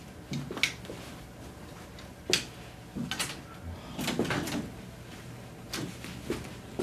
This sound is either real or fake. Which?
real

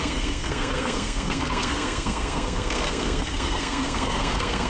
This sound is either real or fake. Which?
fake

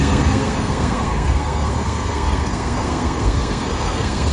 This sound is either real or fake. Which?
fake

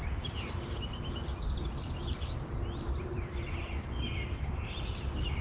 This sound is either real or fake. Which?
real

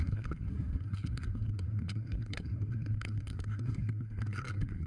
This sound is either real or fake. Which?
fake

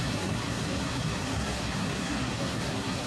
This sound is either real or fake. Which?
fake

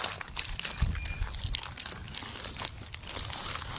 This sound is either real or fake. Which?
real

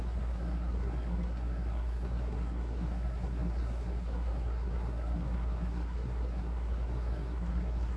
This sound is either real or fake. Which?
fake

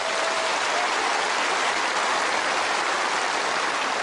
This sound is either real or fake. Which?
real